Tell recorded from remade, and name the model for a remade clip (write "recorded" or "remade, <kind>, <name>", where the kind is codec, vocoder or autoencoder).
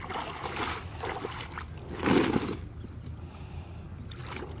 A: recorded